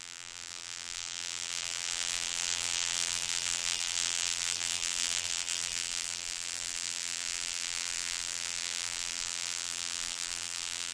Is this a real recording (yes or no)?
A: no